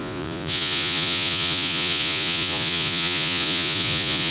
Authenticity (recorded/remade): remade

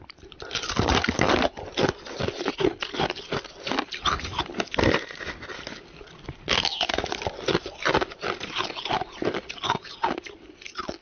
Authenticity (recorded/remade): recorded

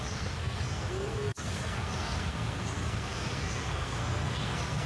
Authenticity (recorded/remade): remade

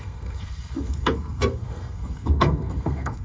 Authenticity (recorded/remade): remade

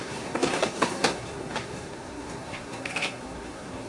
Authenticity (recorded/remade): remade